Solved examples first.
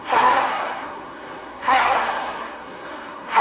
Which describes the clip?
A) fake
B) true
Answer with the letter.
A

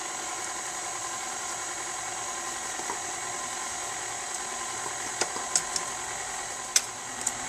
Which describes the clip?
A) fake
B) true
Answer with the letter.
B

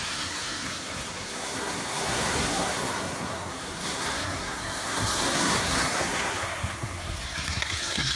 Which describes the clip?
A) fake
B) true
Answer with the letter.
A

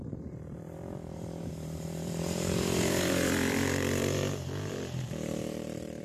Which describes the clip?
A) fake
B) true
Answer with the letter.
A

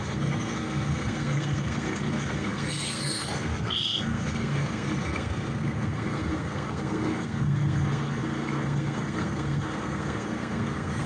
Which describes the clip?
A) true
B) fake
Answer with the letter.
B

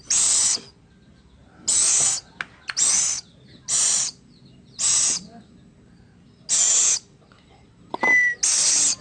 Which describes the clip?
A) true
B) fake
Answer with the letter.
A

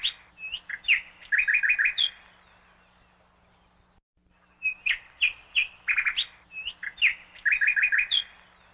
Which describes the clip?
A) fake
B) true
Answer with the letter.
B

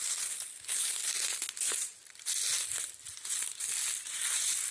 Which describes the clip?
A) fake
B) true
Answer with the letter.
B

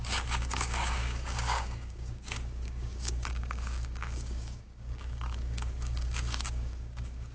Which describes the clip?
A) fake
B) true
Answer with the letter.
A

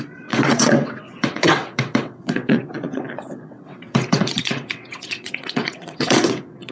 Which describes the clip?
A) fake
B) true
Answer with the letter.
A